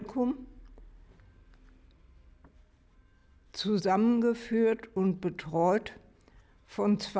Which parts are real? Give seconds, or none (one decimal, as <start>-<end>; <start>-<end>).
0.0-7.2